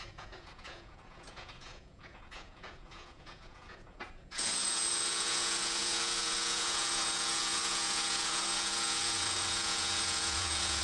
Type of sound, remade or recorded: remade